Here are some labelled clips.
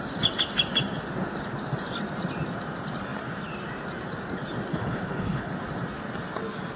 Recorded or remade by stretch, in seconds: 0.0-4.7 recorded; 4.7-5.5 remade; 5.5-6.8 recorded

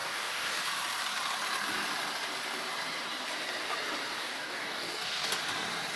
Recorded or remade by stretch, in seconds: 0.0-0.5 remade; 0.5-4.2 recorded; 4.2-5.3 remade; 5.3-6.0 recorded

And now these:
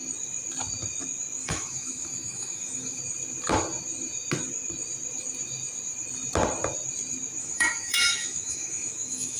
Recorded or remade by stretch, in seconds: 0.0-1.4 recorded; 1.4-3.0 remade; 3.0-7.4 recorded; 7.4-9.4 remade

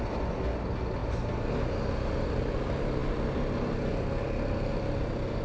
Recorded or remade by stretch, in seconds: 0.0-1.0 recorded; 1.0-1.5 remade; 1.5-5.4 recorded

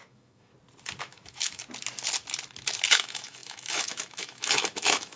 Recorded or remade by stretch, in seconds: 0.0-0.5 remade; 0.5-1.0 recorded; 1.0-1.6 remade; 1.6-2.9 recorded; 2.9-5.2 remade